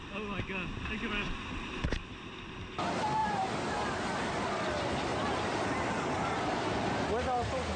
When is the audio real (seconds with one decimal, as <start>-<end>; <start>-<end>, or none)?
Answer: 0.0-3.2; 3.7-5.1; 5.9-7.8